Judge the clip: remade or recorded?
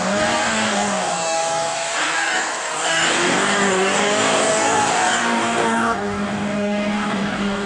remade